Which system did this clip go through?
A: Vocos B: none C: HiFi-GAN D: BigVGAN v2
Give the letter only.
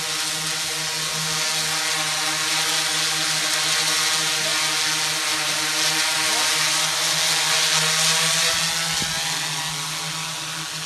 B